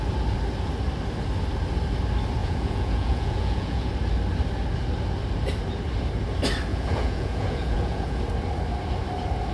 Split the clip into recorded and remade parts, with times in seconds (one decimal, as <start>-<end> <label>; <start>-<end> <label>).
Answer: 0.0-2.4 recorded; 2.4-3.9 remade; 3.9-6.7 recorded; 6.7-8.2 remade; 8.2-9.5 recorded